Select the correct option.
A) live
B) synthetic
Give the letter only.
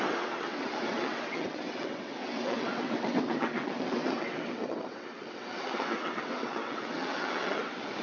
B